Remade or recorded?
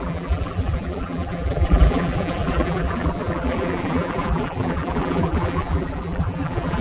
remade